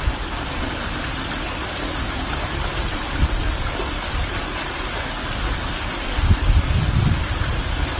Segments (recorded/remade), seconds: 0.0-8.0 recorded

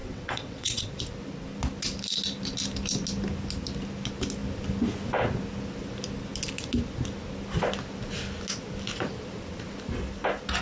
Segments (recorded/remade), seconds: 0.0-0.9 remade; 0.9-10.6 recorded

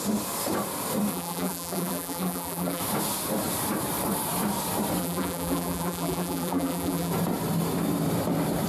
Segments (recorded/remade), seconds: 0.0-1.1 recorded; 1.1-2.8 remade; 2.8-5.0 recorded; 5.0-7.1 remade; 7.1-8.7 recorded

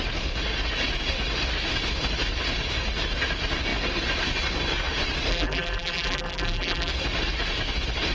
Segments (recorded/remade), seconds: 0.0-5.3 recorded; 5.3-6.9 remade; 6.9-8.1 recorded

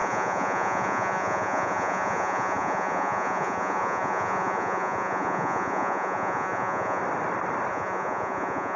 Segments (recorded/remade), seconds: 0.0-7.0 remade; 7.0-7.7 recorded; 7.7-8.8 remade